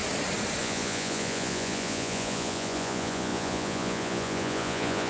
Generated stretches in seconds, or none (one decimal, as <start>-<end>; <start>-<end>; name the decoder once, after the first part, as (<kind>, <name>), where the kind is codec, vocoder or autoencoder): 0.6-5.1 (vocoder, Vocos)